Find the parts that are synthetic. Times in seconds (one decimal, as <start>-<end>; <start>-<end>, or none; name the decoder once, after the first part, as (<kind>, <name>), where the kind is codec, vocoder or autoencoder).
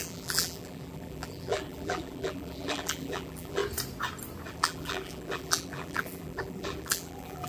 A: 0.0-3.6 (vocoder, BigVGAN v2); 4.5-7.5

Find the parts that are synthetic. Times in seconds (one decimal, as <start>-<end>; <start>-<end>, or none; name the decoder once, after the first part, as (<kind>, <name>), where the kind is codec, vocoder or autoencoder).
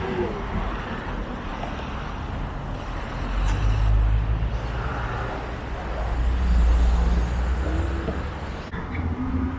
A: none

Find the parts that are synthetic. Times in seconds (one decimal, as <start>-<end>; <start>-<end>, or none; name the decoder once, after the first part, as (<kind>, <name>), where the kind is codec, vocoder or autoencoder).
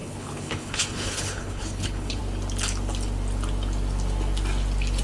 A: 0.0-2.2 (codec, HILCodec)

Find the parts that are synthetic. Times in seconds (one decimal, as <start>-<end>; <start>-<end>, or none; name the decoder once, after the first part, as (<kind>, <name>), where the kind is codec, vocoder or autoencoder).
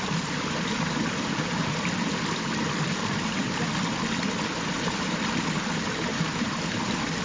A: 6.1-6.6 (vocoder, BigVGAN v2)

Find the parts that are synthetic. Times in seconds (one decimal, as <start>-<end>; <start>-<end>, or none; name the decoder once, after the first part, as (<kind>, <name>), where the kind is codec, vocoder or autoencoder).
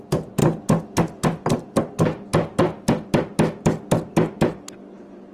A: none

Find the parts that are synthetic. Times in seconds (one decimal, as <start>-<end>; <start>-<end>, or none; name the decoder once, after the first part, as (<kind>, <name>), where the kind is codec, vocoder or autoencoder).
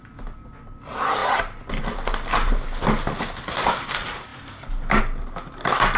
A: none